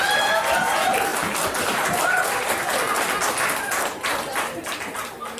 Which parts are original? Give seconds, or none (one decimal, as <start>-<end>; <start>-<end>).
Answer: 0.0-1.1; 2.6-5.4